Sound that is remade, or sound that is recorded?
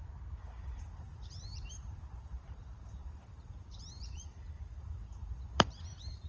remade